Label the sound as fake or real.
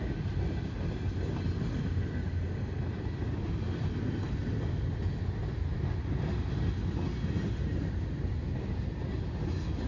real